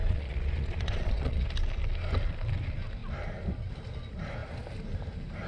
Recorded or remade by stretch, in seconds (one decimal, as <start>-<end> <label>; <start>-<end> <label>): 0.0-1.5 remade; 1.5-5.5 recorded